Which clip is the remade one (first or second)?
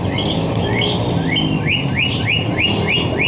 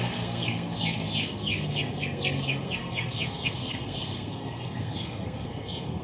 second